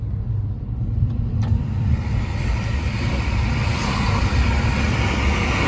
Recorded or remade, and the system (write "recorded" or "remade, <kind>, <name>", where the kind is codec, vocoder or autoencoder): remade, vocoder, BigVGAN v2